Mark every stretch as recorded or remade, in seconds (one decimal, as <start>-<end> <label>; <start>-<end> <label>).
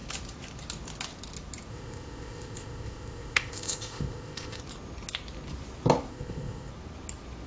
0.0-1.7 recorded; 1.7-4.6 remade; 4.6-6.1 recorded; 6.1-6.7 remade; 6.7-7.5 recorded